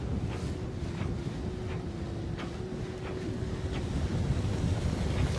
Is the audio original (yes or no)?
yes